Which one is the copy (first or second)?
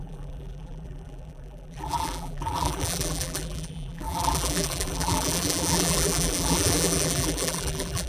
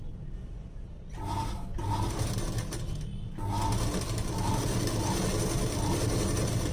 first